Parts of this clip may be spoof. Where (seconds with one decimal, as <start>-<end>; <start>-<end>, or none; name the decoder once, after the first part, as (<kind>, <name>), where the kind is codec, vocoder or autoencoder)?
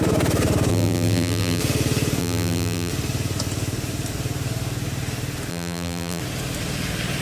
0.7-1.6 (vocoder, BigVGAN v2); 2.2-2.9; 5.5-6.2